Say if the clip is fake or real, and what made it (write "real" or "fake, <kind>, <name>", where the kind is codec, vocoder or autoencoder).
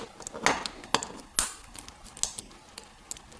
real